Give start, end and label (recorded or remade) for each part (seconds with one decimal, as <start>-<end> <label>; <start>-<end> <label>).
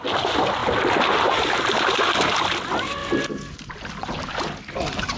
0.0-5.2 recorded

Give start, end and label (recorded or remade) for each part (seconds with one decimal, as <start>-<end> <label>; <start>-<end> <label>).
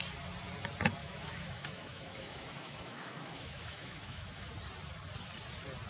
0.0-1.0 recorded; 1.0-4.5 remade; 4.5-5.9 recorded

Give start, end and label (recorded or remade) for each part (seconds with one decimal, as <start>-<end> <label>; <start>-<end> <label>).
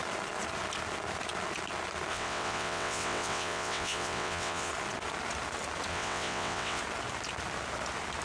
0.0-2.1 recorded; 2.1-4.7 remade; 4.7-5.9 recorded; 5.9-6.8 remade; 6.8-8.2 recorded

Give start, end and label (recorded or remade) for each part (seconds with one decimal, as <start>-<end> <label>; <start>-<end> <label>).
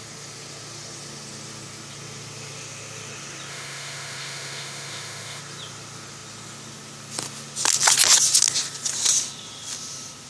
0.0-3.5 recorded; 3.5-5.4 remade; 5.4-10.3 recorded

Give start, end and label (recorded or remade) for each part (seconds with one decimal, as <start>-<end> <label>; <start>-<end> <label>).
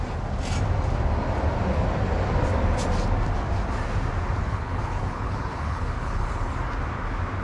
0.0-4.4 recorded; 4.4-6.5 remade; 6.5-7.4 recorded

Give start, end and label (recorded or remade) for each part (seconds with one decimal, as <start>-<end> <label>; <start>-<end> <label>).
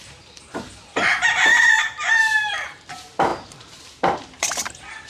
0.0-0.7 remade; 0.7-1.7 recorded; 1.7-5.1 remade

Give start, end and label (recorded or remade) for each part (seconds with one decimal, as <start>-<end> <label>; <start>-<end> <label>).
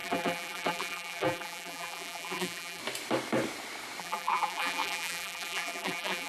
0.0-2.8 remade; 2.8-4.0 recorded; 4.0-6.3 remade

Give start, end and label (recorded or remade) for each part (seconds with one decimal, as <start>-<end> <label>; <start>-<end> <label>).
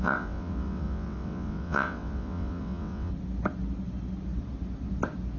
0.0-3.1 remade; 3.1-5.4 recorded